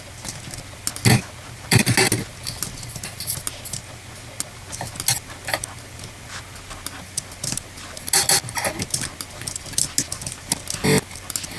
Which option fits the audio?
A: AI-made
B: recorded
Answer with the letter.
B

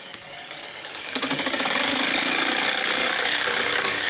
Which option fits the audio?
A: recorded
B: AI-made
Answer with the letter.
B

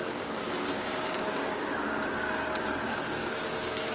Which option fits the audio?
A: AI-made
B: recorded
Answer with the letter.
A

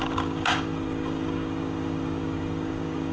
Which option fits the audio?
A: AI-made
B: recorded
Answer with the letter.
A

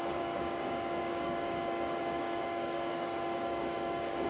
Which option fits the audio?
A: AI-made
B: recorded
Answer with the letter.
A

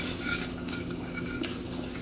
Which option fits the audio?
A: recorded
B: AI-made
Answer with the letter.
B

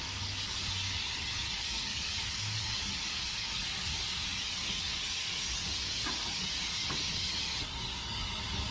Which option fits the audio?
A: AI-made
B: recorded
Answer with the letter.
A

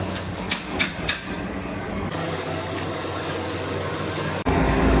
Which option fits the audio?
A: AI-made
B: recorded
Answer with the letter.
A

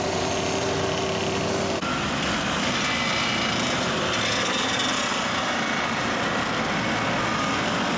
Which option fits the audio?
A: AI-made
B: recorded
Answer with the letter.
B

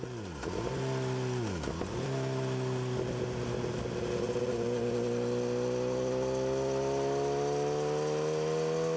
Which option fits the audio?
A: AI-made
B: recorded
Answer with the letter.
B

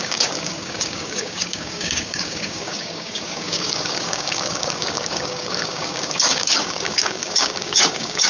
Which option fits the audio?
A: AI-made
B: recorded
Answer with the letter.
A